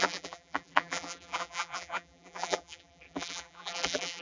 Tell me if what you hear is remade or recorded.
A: remade